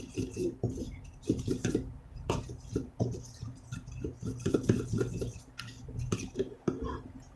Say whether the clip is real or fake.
fake